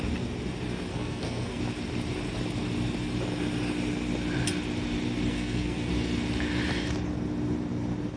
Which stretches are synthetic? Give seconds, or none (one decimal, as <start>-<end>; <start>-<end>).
0.9-1.6; 5.3-5.9